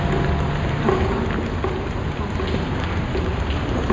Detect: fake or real real